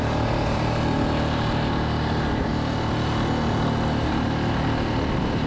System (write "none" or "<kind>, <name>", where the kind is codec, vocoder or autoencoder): none